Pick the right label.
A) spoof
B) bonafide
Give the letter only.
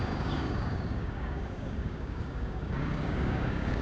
A